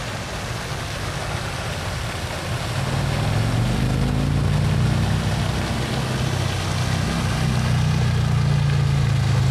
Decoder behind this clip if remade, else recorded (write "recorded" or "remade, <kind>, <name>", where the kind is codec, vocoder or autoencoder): recorded